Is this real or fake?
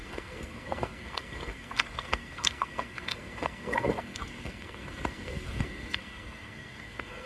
fake